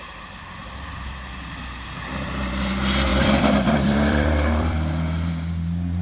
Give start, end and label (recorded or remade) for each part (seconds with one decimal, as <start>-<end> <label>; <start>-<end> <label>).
0.0-3.1 recorded; 3.1-4.9 remade; 4.9-6.0 recorded